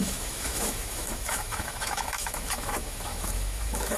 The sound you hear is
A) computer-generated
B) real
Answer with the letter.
A